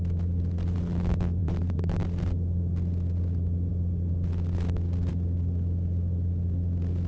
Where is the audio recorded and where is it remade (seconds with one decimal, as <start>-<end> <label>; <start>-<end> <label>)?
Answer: 0.0-1.4 recorded; 1.4-2.0 remade; 2.0-7.1 recorded

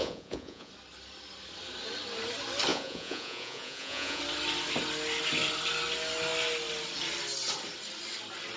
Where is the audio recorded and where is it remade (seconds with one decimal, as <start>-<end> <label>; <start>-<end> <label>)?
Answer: 0.0-0.7 remade; 0.7-2.7 recorded; 2.7-4.2 remade; 4.2-8.6 recorded

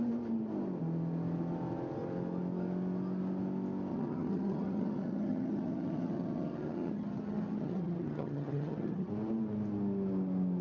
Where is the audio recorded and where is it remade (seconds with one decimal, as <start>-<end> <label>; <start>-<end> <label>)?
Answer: 0.0-3.9 recorded; 3.9-9.1 remade; 9.1-10.6 recorded

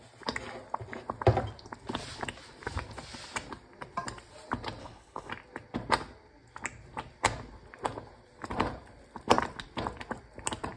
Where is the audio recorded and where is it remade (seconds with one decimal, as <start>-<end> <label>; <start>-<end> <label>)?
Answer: 0.0-4.8 recorded; 4.8-5.3 remade; 5.3-10.8 recorded

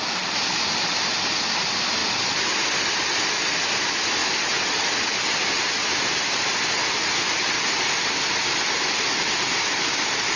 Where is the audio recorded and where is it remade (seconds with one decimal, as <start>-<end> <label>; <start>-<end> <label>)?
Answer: 0.0-10.4 recorded

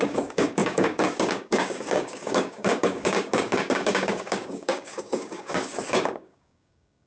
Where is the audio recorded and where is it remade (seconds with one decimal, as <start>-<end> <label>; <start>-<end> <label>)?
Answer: 0.0-7.1 remade

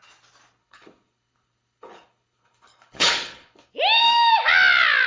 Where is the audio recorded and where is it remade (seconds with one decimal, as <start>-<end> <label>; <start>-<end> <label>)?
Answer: 0.0-0.6 recorded; 0.6-3.7 remade; 3.7-5.1 recorded

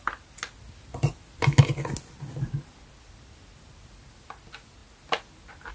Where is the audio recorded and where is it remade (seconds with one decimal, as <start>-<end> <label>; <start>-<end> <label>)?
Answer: 0.0-5.7 recorded